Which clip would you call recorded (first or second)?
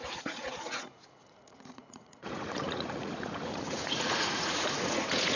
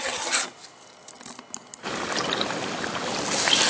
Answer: second